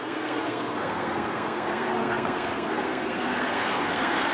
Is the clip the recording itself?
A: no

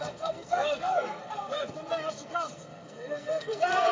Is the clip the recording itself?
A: no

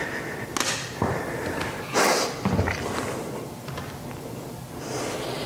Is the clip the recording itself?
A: yes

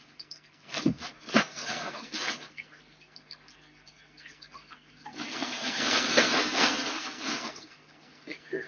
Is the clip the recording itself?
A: no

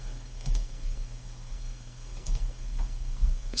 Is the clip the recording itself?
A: no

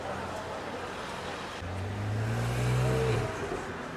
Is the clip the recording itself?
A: yes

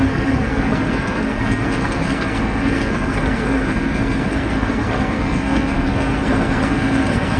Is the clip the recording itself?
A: no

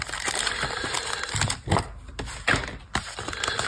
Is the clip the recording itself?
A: yes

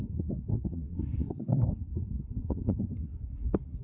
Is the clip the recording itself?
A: no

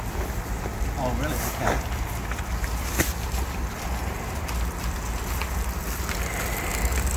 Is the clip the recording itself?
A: yes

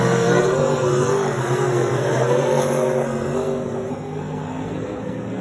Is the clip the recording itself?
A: no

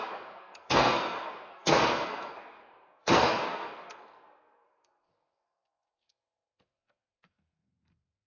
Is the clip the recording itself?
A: no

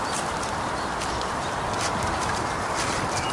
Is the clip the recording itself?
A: yes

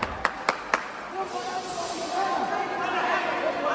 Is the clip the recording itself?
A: yes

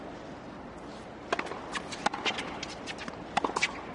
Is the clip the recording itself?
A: yes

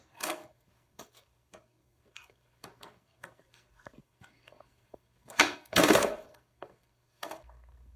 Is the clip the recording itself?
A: no